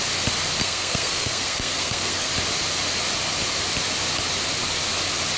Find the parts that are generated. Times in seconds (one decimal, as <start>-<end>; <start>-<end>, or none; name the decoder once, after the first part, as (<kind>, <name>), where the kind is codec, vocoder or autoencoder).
0.6-2.3 (codec, SNAC)